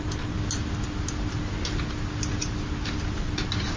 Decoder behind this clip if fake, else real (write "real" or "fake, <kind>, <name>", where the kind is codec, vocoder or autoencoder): real